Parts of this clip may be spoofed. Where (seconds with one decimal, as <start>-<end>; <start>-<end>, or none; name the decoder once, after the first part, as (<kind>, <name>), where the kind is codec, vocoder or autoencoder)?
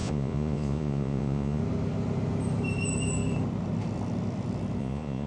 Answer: 0.0-1.6 (vocoder, Vocos); 4.8-5.3